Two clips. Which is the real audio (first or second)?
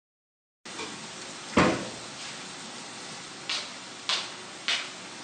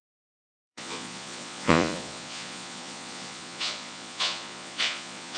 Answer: first